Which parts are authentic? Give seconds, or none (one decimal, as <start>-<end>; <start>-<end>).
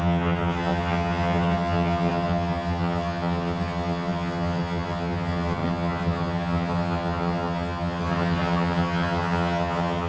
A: none